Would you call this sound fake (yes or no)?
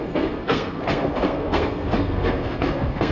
yes